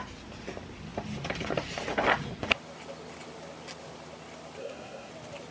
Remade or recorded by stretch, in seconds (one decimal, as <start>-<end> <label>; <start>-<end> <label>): 0.0-4.6 recorded; 4.6-5.1 remade; 5.1-5.5 recorded